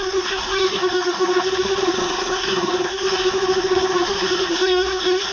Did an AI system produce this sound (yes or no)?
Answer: yes